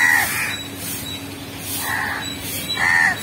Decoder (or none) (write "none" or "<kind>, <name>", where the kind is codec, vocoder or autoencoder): none